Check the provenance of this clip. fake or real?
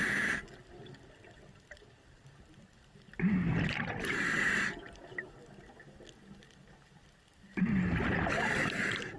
real